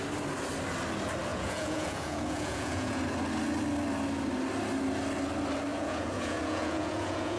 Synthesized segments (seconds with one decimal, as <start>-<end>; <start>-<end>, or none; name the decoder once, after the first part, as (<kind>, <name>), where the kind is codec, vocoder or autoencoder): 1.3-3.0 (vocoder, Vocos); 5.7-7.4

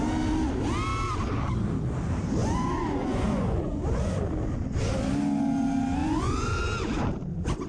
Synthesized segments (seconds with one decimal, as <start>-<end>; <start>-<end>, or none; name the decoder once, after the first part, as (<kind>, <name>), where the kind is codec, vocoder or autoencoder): 2.4-4.2 (vocoder, Vocos); 6.0-6.6

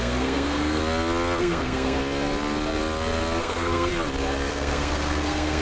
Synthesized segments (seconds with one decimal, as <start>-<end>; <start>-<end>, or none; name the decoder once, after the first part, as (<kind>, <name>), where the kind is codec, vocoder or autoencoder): 0.0-0.8 (codec, SNAC); 1.4-2.0; 3.4-3.9; 4.5-5.6

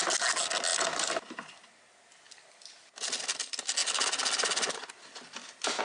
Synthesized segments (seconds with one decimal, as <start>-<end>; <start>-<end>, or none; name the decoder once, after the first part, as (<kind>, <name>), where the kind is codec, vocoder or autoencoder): none